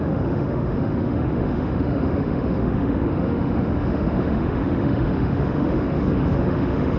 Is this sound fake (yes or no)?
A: yes